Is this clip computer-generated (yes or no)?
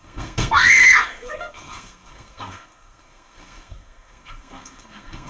yes